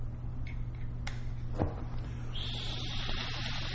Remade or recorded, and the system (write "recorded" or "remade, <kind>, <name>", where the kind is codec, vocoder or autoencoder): recorded